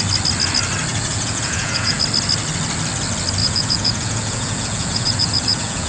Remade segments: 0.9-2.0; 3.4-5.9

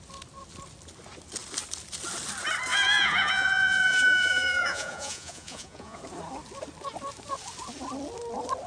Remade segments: 2.7-6.0